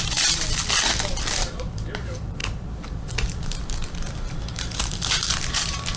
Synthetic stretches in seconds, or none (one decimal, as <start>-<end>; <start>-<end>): 0.0-0.6; 1.3-6.0